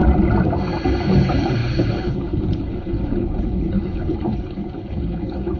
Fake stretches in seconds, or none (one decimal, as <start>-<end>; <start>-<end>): 1.0-5.6